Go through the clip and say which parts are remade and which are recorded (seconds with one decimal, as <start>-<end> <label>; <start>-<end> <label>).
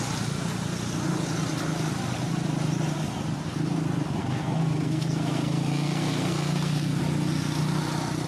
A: 0.0-4.2 recorded; 4.2-7.0 remade; 7.0-8.3 recorded